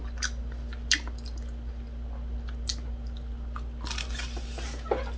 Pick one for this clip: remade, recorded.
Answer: recorded